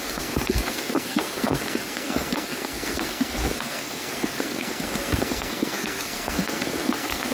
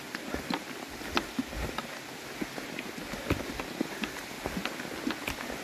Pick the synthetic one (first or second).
first